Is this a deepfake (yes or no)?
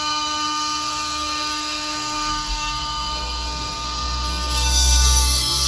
yes